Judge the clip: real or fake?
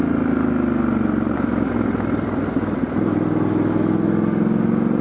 real